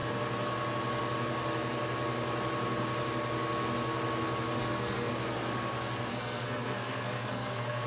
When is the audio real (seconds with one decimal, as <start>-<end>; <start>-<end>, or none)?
0.0-4.6; 5.1-6.1